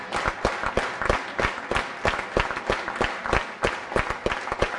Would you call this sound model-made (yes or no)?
no